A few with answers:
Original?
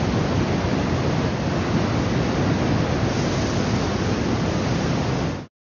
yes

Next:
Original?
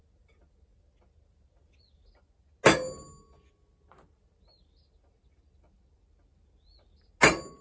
yes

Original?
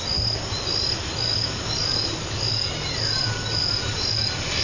yes